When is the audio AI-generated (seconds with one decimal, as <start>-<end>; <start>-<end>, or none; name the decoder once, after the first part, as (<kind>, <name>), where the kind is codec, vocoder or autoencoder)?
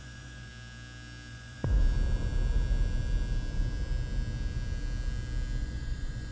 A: 0.0-0.5 (vocoder, Vocos); 1.3-1.8; 5.6-6.3